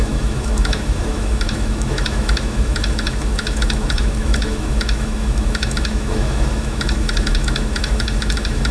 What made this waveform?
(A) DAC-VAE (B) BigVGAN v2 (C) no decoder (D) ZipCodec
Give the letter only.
A